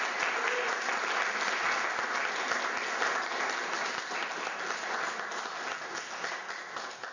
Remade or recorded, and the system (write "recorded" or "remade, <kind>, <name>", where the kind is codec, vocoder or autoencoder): recorded